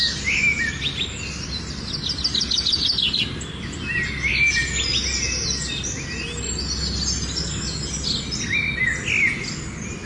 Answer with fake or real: real